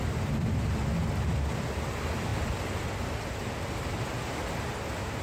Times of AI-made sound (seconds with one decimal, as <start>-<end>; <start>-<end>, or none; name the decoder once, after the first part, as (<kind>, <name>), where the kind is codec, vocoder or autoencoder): none